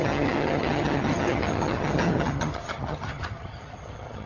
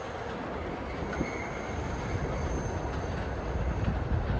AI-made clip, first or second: first